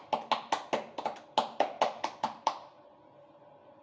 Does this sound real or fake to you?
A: real